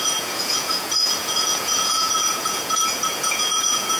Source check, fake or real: fake